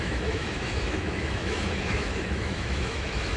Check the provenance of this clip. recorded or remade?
remade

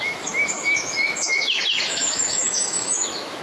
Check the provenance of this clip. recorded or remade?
remade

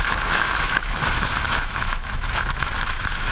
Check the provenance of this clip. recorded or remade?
remade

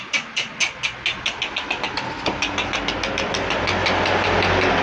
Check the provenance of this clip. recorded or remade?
recorded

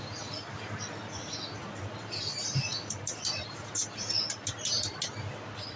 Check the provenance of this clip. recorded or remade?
recorded